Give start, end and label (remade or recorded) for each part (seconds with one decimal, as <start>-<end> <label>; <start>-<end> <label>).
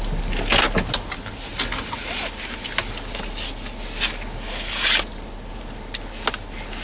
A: 0.0-6.8 recorded